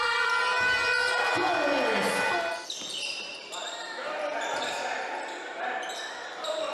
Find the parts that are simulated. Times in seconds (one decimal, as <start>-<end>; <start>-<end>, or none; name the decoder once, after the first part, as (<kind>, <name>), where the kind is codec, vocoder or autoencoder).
0.0-1.4 (vocoder, BigVGAN v2); 2.5-6.7